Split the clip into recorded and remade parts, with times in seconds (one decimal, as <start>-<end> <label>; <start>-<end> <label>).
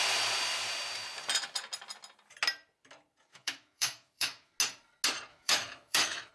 0.0-3.3 recorded; 3.3-4.5 remade; 4.5-5.3 recorded; 5.3-6.3 remade